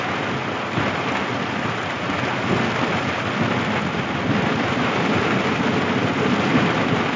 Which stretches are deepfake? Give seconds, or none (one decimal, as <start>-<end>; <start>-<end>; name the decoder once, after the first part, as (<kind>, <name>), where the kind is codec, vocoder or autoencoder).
none

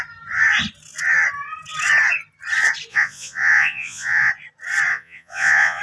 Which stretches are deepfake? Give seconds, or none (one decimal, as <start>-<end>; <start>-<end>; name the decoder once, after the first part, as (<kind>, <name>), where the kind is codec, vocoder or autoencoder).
2.9-4.3 (vocoder, Vocos); 4.9-5.8

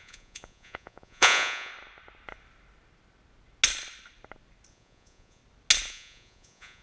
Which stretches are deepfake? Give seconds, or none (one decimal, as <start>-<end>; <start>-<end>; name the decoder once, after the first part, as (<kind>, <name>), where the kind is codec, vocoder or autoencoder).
0.0-1.7 (vocoder, Vocos); 4.7-5.4; 5.9-6.8

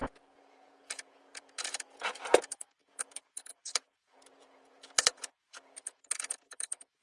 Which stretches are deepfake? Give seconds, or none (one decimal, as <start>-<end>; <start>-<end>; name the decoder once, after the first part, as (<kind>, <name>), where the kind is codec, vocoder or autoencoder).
0.0-7.0 (vocoder, Vocos)

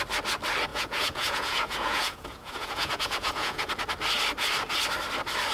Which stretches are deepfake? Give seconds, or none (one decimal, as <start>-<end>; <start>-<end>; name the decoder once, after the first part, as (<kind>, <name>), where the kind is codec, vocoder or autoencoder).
0.7-3.7 (vocoder, Vocos)